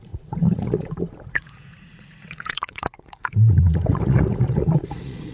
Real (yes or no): no